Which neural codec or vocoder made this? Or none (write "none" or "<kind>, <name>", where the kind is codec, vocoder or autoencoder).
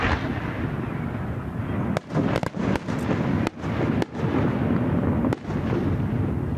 none